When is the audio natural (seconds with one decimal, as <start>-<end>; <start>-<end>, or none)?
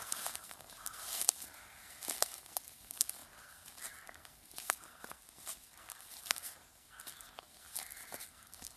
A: none